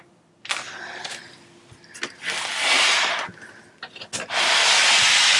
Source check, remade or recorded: recorded